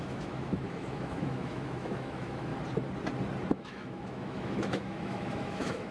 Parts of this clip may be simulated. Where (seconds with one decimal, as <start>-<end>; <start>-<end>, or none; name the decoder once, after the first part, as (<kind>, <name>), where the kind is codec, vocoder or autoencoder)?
0.0-2.5 (autoencoder, DAC-VAE); 3.5-5.9